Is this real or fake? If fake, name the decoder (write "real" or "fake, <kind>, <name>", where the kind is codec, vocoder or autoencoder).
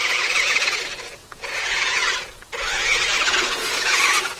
fake, vocoder, Vocos